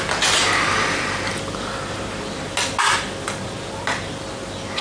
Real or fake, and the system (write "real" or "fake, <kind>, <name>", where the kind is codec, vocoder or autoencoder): real